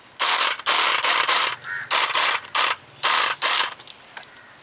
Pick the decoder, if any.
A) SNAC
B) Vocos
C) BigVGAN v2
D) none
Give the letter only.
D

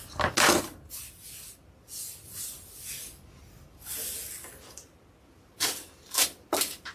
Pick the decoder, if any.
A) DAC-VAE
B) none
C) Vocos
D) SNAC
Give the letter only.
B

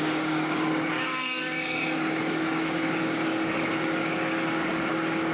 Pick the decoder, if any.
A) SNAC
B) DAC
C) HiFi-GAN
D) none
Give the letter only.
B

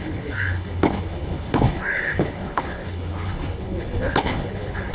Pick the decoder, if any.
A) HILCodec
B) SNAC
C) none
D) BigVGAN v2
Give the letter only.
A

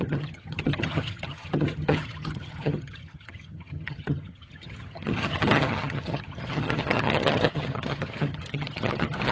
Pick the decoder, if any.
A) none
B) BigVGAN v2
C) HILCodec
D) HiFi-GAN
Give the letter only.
D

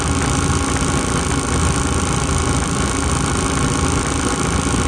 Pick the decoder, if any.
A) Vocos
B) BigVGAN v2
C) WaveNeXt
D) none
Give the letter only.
D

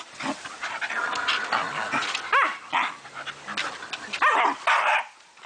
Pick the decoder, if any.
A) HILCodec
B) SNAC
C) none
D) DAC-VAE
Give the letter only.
C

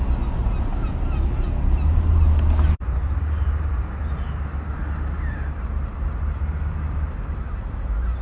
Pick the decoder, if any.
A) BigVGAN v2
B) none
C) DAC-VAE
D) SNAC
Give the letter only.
B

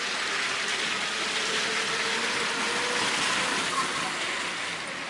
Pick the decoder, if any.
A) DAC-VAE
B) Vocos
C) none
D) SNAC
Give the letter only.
C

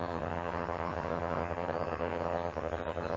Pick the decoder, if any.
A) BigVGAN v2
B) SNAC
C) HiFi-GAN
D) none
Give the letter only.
C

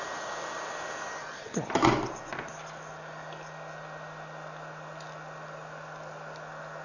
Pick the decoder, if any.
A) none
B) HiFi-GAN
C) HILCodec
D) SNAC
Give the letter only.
A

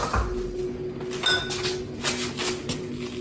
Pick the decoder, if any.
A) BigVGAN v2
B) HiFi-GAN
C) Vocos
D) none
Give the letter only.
D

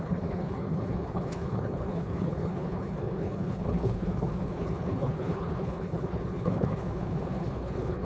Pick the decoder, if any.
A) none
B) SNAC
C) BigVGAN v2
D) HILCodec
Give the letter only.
D